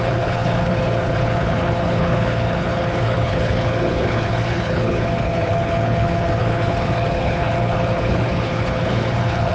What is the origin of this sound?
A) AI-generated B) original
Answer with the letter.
A